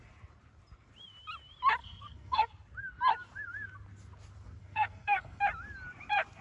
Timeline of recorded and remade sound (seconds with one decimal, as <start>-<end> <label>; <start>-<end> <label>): 0.0-1.8 recorded; 1.8-2.5 remade; 2.5-4.6 recorded; 4.6-5.4 remade; 5.4-6.4 recorded